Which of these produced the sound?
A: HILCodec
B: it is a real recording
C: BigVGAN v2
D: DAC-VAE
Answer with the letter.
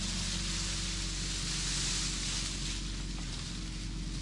B